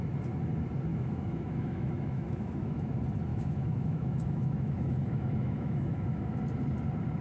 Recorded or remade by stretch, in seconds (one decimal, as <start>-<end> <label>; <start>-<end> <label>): 0.0-0.9 recorded; 0.9-2.9 remade; 2.9-3.3 recorded; 3.3-6.4 remade; 6.4-7.2 recorded